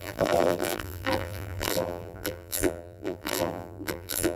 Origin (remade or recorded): remade